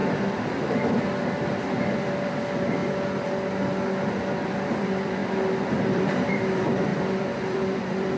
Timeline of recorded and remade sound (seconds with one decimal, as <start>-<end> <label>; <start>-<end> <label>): 0.0-2.0 recorded; 2.0-2.8 remade; 2.8-4.7 recorded; 4.7-5.2 remade; 5.2-5.8 recorded; 5.8-8.2 remade